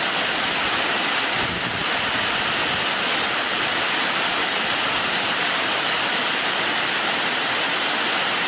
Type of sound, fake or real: real